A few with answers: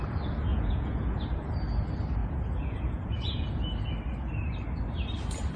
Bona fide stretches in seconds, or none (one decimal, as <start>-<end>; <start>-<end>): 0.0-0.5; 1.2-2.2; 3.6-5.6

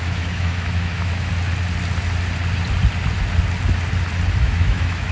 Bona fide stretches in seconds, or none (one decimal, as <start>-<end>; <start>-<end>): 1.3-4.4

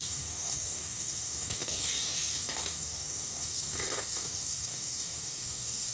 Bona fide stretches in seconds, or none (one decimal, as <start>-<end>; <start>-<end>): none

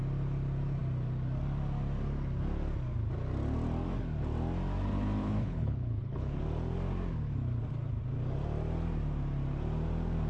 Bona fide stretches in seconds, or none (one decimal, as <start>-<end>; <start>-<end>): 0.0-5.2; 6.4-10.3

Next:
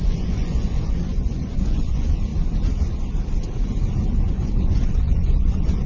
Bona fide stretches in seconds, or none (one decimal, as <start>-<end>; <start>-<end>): 2.3-4.3

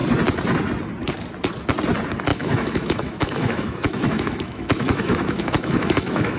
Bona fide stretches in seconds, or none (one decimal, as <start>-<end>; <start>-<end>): 0.0-2.3

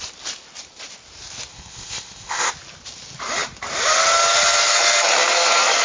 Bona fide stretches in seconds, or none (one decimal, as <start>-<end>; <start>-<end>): 0.0-1.5; 2.5-5.8